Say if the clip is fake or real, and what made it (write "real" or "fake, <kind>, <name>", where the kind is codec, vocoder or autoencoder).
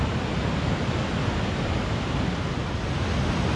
real